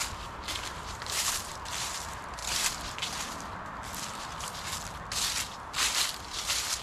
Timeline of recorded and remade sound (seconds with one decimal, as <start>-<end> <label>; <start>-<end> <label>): 0.0-2.4 remade; 2.4-5.5 recorded; 5.5-6.8 remade